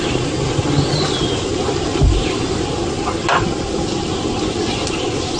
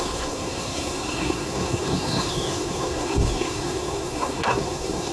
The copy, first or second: second